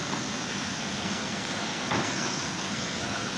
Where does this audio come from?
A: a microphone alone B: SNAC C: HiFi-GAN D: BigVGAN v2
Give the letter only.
B